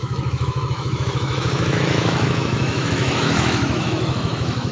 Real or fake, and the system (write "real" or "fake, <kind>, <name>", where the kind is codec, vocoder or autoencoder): fake, autoencoder, DAC-VAE